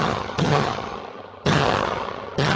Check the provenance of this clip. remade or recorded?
remade